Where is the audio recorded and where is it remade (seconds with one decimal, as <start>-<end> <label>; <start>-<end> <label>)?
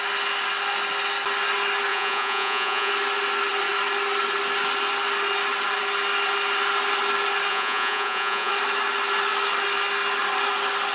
0.0-1.9 recorded; 1.9-2.9 remade; 2.9-7.5 recorded; 7.5-8.5 remade; 8.5-10.9 recorded